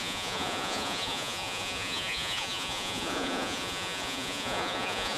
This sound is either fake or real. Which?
fake